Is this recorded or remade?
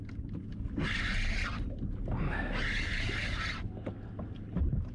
recorded